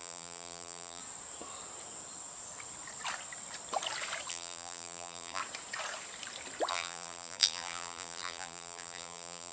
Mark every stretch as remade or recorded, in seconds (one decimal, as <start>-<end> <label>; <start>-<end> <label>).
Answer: 0.0-1.0 remade; 1.0-4.3 recorded; 4.3-5.4 remade; 5.4-6.7 recorded; 6.7-9.5 remade